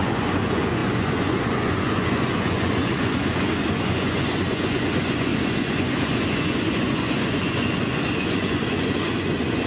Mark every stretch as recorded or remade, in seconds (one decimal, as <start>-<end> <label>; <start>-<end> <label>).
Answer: 0.0-9.7 remade